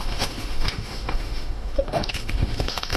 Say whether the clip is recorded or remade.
remade